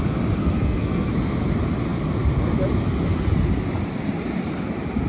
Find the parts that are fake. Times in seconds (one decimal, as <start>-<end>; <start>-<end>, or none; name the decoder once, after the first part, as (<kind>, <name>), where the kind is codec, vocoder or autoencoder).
0.4-1.1 (codec, SNAC)

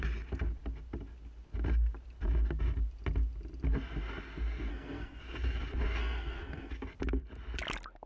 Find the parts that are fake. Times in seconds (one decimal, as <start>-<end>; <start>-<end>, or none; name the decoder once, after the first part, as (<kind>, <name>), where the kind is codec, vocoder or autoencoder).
4.7-5.2 (codec, SNAC); 6.0-6.7

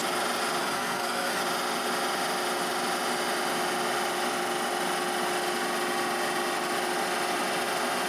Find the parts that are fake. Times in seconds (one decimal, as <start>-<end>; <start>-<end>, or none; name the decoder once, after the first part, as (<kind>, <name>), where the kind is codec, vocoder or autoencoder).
0.6-1.4 (codec, SNAC)